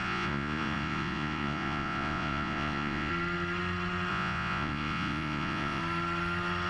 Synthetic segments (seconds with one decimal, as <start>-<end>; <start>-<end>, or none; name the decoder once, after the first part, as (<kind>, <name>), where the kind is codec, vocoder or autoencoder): 0.0-3.1 (vocoder, Vocos); 4.1-5.8